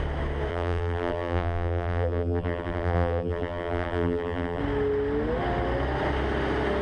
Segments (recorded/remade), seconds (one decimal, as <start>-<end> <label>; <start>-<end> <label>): 0.0-0.5 recorded; 0.5-4.6 remade; 4.6-6.8 recorded

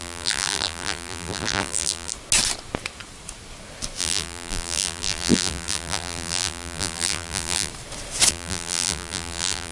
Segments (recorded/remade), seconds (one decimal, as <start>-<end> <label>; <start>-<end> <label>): 0.0-2.1 remade; 2.1-4.0 recorded; 4.0-7.7 remade; 7.7-8.3 recorded; 8.3-9.7 remade

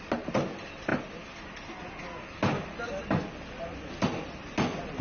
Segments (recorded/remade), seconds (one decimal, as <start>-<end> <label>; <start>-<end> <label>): 0.0-0.9 recorded; 0.9-1.7 remade; 1.7-5.0 recorded